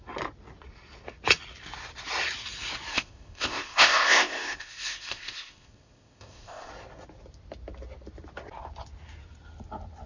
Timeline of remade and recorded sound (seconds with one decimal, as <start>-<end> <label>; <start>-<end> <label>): 0.0-2.9 recorded; 2.9-6.7 remade; 6.7-10.1 recorded